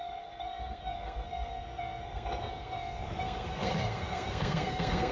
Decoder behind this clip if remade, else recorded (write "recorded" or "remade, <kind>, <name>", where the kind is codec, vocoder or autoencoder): remade, codec, SNAC